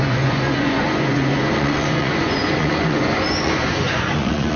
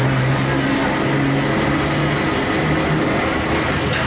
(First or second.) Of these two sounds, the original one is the second